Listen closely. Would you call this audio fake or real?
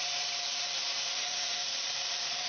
fake